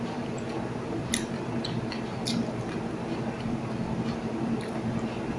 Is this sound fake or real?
real